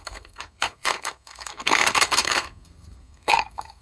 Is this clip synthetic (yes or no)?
yes